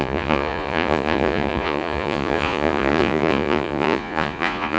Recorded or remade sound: remade